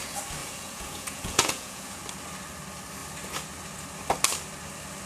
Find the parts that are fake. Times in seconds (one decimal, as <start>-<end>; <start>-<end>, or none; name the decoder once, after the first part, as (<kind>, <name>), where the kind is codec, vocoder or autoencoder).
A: 0.4-2.0 (vocoder, Vocos)